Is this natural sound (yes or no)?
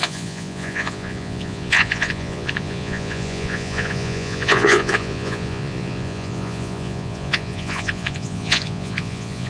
no